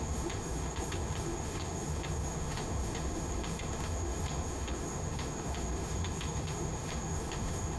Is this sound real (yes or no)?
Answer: no